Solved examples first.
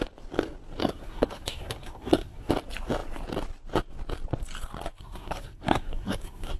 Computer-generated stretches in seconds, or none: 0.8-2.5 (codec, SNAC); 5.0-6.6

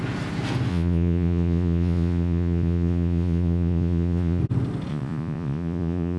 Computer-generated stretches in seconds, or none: 0.7-4.4 (vocoder, Vocos); 4.9-6.2